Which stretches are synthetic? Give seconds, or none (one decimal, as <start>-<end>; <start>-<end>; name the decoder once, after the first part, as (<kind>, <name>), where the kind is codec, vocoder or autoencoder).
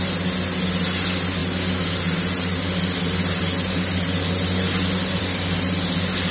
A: none